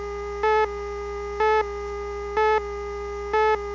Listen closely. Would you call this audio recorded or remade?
recorded